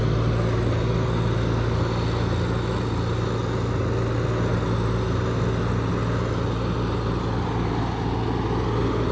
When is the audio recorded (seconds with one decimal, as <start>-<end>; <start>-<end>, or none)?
0.0-9.1

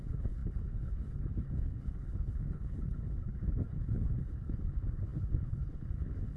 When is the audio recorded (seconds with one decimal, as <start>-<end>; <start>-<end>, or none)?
none

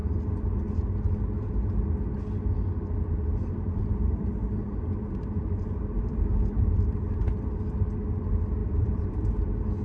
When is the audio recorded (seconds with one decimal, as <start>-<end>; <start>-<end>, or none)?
0.0-3.4; 7.2-8.6; 9.3-9.8

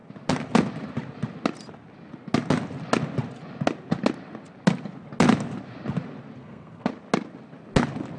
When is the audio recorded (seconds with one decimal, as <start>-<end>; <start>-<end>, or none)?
0.0-6.4; 6.9-8.2

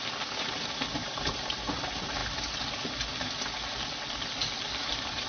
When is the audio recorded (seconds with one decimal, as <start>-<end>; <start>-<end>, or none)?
0.0-1.0; 1.6-5.3

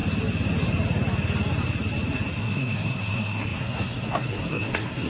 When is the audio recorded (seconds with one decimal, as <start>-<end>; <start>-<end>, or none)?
0.0-2.4

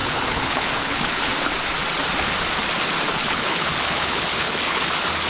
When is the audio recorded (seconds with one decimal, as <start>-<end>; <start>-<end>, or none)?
1.3-3.1; 4.8-5.3

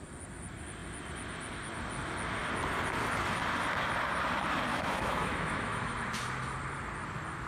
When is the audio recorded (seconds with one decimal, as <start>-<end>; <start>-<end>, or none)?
0.0-4.7; 5.9-7.5